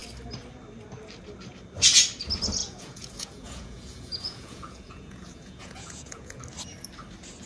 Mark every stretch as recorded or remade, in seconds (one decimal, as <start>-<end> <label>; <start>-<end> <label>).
0.0-2.6 recorded; 2.6-6.4 remade; 6.4-7.5 recorded